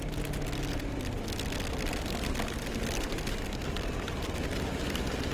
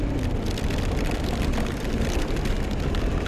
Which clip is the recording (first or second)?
first